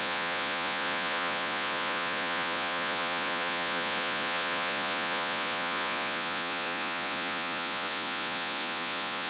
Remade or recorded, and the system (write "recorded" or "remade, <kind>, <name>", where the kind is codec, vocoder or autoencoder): remade, vocoder, Vocos